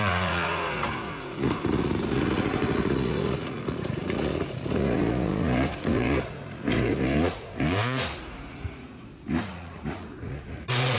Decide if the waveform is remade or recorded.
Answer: remade